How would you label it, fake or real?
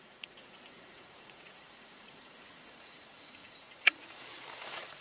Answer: fake